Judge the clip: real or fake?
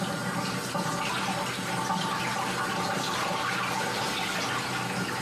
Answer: real